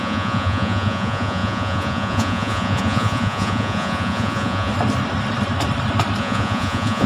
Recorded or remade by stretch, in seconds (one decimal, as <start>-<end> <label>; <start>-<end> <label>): 0.0-4.7 remade; 4.7-6.2 recorded; 6.2-7.1 remade